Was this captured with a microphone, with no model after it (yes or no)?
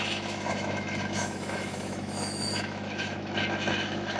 no